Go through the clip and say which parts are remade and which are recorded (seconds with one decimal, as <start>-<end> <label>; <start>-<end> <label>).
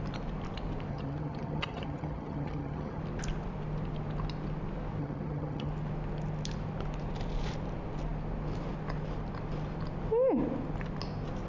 0.0-0.9 recorded; 0.9-3.0 remade; 3.0-5.0 recorded; 5.0-5.7 remade; 5.7-11.5 recorded